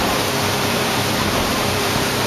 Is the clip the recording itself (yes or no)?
no